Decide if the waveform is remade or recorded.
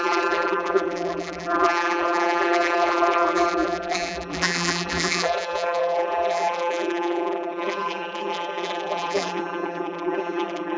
remade